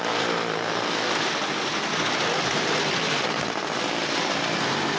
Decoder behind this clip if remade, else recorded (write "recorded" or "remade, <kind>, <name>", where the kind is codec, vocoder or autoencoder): recorded